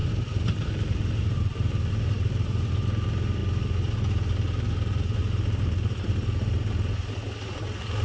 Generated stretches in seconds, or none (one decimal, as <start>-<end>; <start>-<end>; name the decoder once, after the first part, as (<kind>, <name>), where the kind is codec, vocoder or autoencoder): 0.0-2.7 (vocoder, BigVGAN v2)

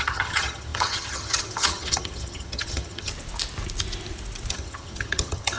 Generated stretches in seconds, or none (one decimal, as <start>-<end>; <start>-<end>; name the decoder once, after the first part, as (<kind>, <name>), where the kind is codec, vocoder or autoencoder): 0.0-3.1 (vocoder, HiFi-GAN); 4.5-5.6

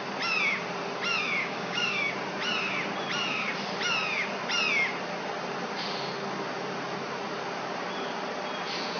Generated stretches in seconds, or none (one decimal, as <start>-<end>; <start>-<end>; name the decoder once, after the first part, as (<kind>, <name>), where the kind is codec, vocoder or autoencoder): 1.4-2.1 (codec, DAC)

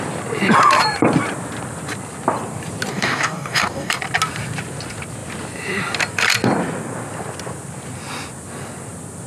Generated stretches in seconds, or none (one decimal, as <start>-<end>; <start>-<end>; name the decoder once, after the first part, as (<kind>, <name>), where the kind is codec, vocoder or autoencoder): 2.9-4.0 (codec, DAC)

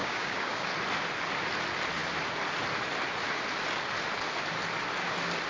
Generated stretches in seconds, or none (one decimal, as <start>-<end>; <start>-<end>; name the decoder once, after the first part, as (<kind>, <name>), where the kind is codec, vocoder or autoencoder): 0.0-0.7 (codec, DAC)

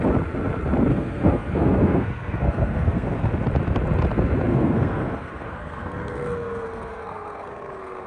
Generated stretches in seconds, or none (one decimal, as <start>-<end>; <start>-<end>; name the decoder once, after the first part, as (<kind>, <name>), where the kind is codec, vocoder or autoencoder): 0.9-3.3 (codec, SNAC); 4.5-8.1

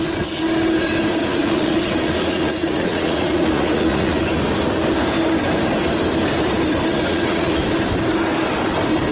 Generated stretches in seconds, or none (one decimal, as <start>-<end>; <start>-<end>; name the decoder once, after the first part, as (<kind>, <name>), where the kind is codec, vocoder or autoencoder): 1.2-4.2 (vocoder, Vocos); 6.9-7.6